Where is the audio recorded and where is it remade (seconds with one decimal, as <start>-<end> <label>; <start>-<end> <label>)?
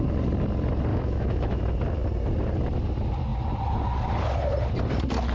0.0-0.9 recorded; 0.9-1.6 remade; 1.6-5.3 recorded